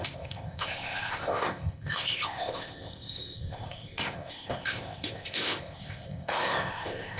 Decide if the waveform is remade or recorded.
remade